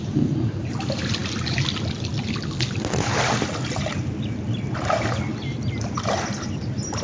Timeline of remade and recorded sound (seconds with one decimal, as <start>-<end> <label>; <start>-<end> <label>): 0.0-7.0 recorded